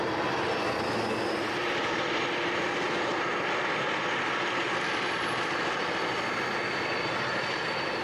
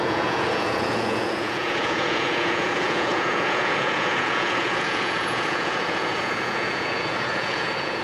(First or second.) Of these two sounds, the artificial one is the second